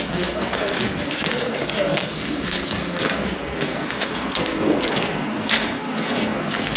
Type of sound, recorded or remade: remade